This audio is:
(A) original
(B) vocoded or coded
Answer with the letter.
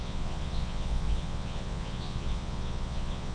B